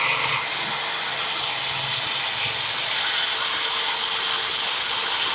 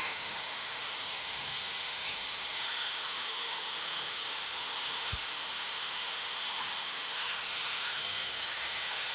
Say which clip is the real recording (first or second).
first